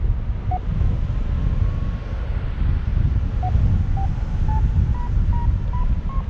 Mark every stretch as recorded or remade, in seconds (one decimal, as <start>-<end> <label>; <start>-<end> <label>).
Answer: 0.0-6.3 recorded